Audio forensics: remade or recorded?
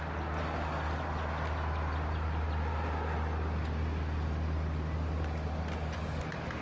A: recorded